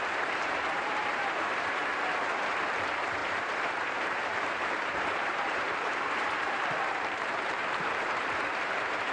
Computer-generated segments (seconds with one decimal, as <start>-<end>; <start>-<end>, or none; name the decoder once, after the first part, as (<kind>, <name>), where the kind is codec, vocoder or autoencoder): 0.0-1.9 (vocoder, BigVGAN v2); 2.8-9.1